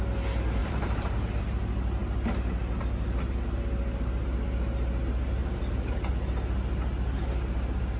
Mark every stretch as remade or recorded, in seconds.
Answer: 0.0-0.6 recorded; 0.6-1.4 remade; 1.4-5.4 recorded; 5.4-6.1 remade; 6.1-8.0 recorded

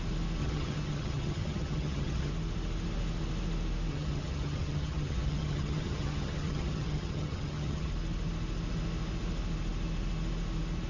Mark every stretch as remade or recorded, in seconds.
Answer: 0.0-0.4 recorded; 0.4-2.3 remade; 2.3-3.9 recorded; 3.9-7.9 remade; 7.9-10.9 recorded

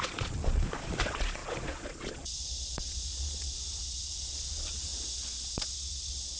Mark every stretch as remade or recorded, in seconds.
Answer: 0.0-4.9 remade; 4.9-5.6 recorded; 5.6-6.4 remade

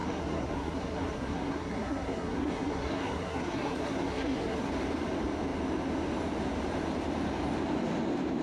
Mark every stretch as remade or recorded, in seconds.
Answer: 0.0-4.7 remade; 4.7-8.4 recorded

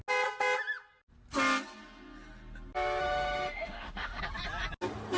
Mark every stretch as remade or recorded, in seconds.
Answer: 0.0-3.0 recorded; 3.0-4.2 remade; 4.2-5.2 recorded